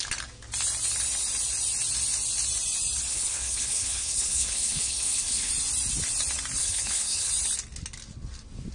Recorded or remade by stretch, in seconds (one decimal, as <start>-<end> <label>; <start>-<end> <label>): 0.0-3.1 recorded; 3.1-5.5 remade; 5.5-6.6 recorded; 6.6-7.3 remade; 7.3-8.7 recorded